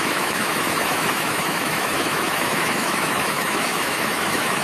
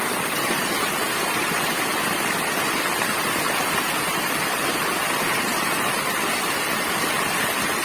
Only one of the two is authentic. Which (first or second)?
second